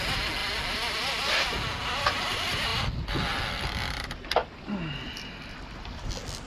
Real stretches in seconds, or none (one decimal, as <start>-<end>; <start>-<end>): 0.0-6.5